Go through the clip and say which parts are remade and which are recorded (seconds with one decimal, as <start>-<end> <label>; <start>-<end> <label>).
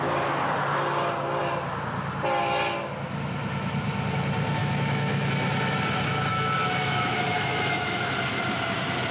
0.0-4.6 recorded; 4.6-5.3 remade; 5.3-6.3 recorded; 6.3-8.1 remade; 8.1-9.1 recorded